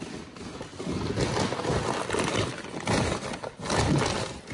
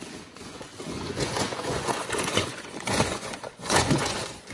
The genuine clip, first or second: first